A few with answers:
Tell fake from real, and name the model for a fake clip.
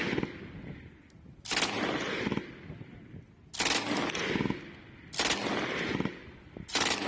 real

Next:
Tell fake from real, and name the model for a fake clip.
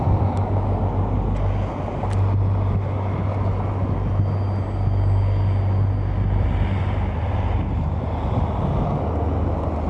real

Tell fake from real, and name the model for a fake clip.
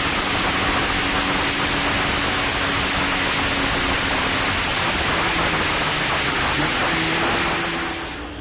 real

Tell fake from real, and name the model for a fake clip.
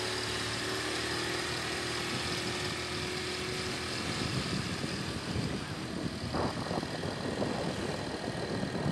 real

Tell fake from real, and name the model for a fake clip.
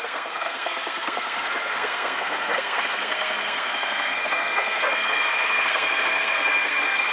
fake, codec, SNAC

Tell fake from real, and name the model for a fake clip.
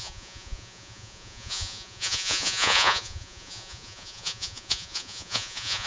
fake, vocoder, Vocos